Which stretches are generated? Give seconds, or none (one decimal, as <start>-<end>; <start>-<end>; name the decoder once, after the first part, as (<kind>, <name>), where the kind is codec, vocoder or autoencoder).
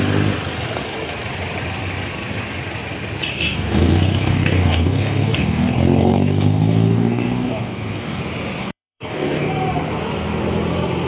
3.3-8.2 (codec, DAC); 8.6-9.5